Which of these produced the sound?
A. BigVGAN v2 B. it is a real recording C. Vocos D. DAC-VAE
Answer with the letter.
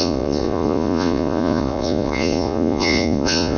C